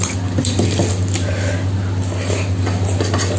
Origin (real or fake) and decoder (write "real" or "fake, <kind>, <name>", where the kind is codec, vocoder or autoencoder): real